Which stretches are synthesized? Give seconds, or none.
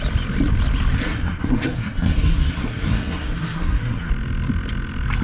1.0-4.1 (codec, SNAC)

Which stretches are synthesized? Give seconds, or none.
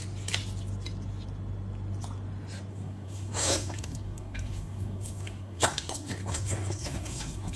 2.7-7.6 (codec, SNAC)